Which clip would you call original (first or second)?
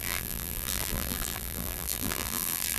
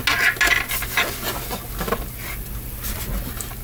second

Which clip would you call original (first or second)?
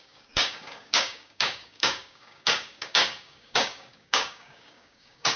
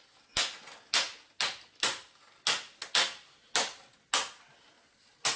second